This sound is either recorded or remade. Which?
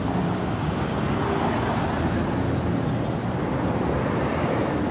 recorded